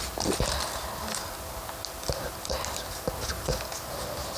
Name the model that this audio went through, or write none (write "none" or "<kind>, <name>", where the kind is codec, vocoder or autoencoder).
none